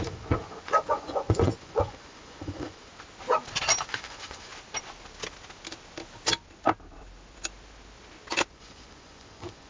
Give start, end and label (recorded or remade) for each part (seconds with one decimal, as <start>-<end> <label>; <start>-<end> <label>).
0.0-2.9 remade; 2.9-3.8 recorded; 3.8-4.5 remade; 4.5-8.5 recorded; 8.5-9.7 remade